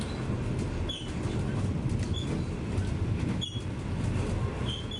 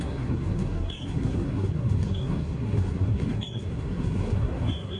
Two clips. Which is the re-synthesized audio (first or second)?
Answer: second